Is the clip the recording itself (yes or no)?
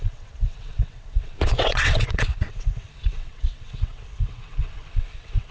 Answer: no